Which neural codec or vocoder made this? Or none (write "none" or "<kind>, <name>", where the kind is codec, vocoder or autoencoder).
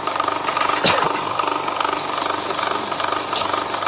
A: none